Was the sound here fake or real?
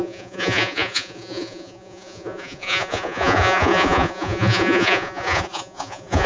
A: fake